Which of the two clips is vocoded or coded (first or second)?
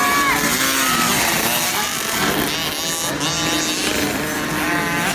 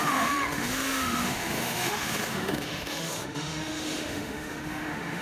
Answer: second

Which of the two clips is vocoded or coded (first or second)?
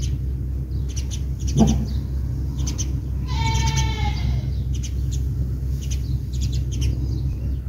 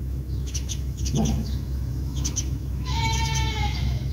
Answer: second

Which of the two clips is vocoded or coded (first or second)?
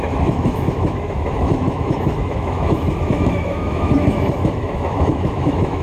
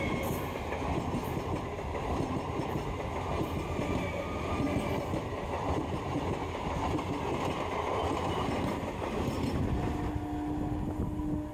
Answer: first